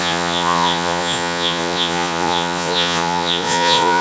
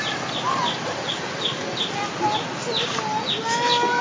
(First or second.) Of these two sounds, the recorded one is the second